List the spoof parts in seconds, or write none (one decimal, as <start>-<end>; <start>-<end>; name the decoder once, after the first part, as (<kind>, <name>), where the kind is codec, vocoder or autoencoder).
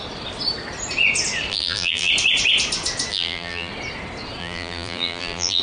1.5-2.1 (vocoder, BigVGAN v2); 3.1-3.7; 4.4-5.6